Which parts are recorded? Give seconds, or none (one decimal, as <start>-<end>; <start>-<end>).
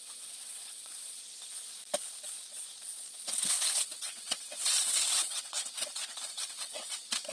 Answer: 1.2-3.5